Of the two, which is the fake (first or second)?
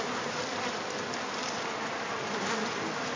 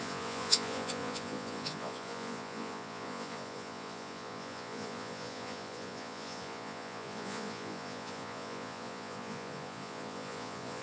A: second